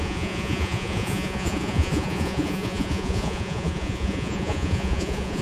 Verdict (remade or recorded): remade